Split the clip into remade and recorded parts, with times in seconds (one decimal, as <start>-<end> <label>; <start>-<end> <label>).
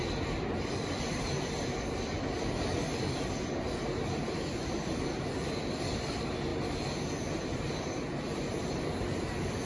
0.0-9.7 recorded